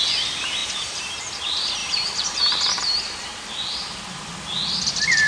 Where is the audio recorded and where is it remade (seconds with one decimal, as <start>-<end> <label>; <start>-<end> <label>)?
0.0-0.6 recorded; 0.6-1.1 remade; 1.1-1.8 recorded; 1.8-5.3 remade